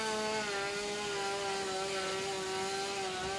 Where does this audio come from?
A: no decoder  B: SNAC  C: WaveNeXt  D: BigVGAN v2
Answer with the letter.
A